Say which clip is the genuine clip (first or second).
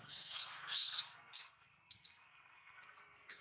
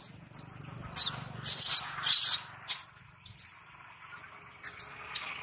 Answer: second